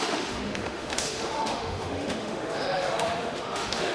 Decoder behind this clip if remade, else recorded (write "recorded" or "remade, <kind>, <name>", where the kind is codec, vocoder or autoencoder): remade, autoencoder, DAC-VAE